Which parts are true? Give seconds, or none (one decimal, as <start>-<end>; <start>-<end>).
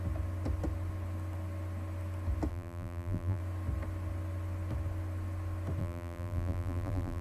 0.0-2.5; 3.4-5.8